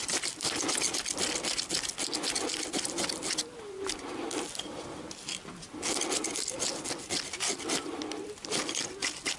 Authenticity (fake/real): real